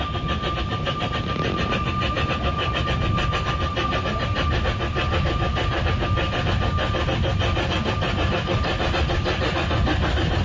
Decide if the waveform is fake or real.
real